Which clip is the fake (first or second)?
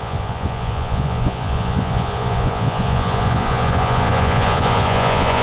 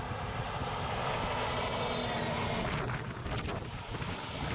first